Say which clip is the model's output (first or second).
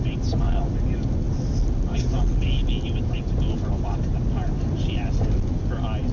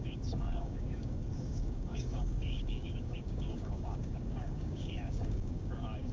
second